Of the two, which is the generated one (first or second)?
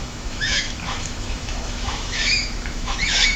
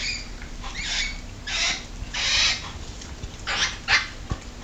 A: first